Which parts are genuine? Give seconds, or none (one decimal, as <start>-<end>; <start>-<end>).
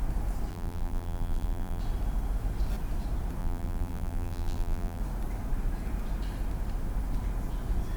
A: 0.0-0.5; 1.8-3.4; 5.0-8.0